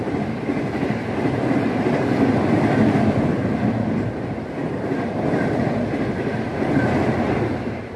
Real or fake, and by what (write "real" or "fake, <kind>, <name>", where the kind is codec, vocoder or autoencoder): real